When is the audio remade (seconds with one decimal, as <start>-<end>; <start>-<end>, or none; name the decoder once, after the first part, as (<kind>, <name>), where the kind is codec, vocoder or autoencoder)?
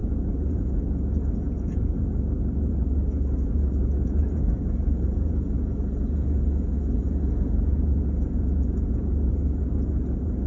0.0-10.5 (vocoder, Vocos)